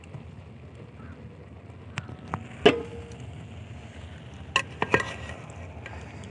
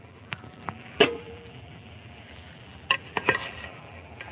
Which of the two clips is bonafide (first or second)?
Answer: first